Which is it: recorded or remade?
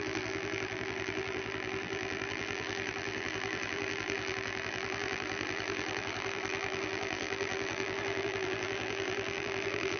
remade